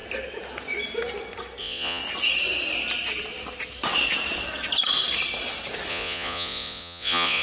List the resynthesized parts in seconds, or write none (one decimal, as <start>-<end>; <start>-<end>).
1.6-2.0; 5.9-7.4